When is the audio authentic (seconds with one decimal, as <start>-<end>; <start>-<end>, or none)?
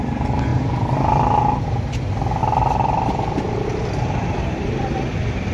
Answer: 0.0-0.5; 1.6-2.4; 4.5-5.5